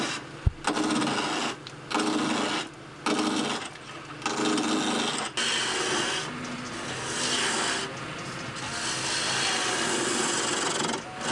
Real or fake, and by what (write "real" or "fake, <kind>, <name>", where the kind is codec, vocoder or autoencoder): real